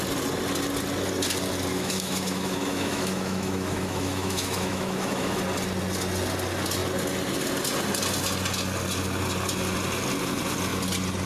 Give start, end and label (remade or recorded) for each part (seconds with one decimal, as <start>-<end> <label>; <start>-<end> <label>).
0.0-1.7 recorded; 1.7-5.4 remade; 5.4-11.3 recorded